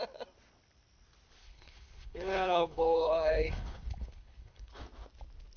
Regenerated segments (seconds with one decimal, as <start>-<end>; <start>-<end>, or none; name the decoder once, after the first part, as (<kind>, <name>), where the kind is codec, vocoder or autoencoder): 1.4-4.8 (codec, HILCodec)